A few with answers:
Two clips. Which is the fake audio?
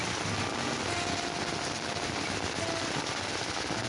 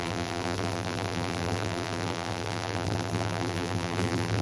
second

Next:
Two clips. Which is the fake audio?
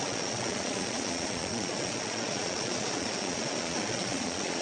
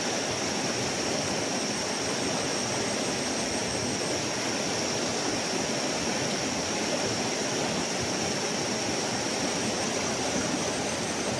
first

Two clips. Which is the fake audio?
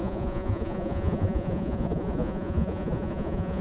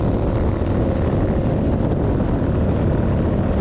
first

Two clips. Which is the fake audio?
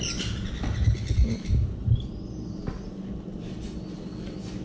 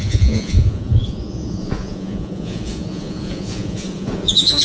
second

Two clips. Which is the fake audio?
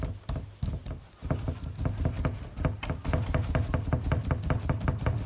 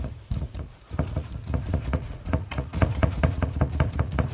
second